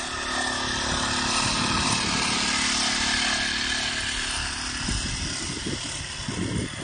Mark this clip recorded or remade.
recorded